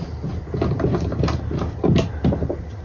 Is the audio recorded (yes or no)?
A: yes